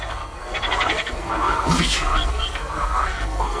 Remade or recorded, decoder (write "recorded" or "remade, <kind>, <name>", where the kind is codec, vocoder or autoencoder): remade, codec, SNAC